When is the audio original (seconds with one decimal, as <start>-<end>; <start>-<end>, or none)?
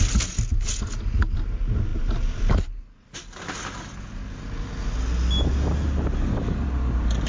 0.0-7.3